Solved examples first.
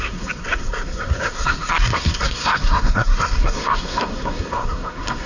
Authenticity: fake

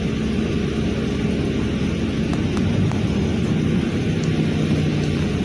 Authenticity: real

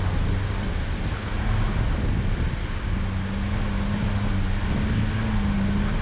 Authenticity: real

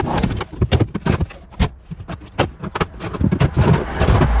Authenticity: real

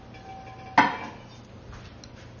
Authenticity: real